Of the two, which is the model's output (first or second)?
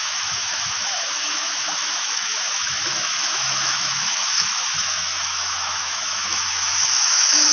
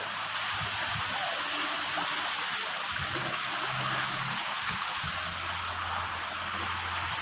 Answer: first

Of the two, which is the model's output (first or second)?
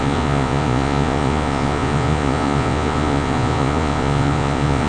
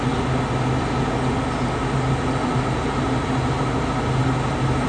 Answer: first